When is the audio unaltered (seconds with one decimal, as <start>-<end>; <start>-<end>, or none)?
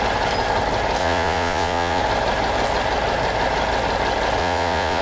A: 0.0-1.0; 2.0-4.4